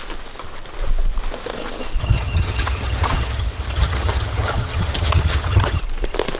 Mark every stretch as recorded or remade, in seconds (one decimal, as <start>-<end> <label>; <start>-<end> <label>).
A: 0.0-2.0 recorded; 2.0-5.8 remade; 5.8-6.4 recorded